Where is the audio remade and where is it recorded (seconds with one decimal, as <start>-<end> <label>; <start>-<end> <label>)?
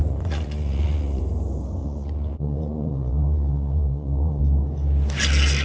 0.0-1.2 remade; 1.2-1.8 recorded; 1.8-4.4 remade; 4.4-5.6 recorded